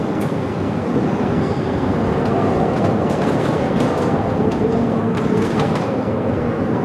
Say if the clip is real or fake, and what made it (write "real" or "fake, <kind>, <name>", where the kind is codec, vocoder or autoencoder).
fake, codec, SNAC